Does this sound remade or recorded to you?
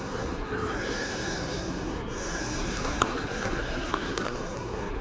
remade